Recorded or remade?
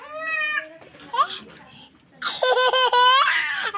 recorded